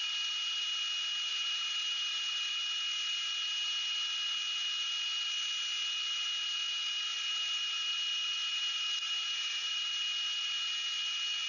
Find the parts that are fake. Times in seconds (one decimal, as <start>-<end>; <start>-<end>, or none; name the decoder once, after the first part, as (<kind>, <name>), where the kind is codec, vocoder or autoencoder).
1.3-2.5 (vocoder, BigVGAN v2); 7.1-7.9; 8.4-9.7